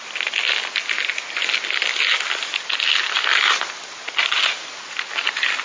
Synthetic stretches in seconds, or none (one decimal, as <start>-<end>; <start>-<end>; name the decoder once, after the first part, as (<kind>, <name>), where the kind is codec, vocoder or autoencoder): none

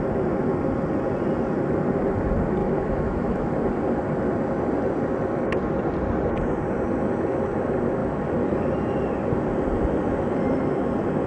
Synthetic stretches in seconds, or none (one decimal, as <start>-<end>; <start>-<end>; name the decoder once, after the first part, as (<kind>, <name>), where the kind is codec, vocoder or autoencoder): 2.6-3.5 (autoencoder, DAC-VAE)

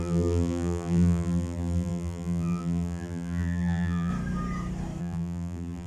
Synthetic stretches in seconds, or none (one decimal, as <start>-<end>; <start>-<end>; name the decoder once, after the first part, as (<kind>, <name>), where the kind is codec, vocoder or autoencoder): 0.0-4.1 (vocoder, BigVGAN v2); 5.0-5.9

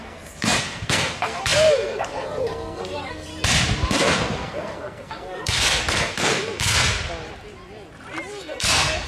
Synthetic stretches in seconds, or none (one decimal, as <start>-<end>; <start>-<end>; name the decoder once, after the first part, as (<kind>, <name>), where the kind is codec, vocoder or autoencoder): 0.0-3.3 (codec, SNAC); 3.9-6.9; 8.3-9.1